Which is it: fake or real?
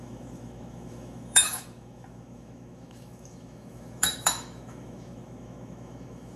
fake